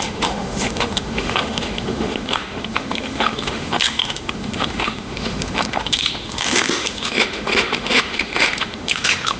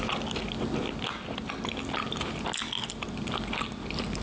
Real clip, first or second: second